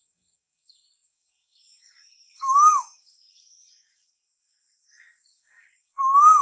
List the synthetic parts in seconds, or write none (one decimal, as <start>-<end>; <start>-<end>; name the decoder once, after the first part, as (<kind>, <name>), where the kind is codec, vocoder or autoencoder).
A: 0.0-6.4 (codec, DAC)